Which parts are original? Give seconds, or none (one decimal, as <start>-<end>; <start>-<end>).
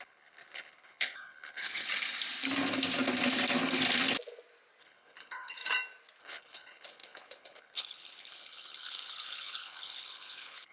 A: 1.9-4.8; 5.6-6.2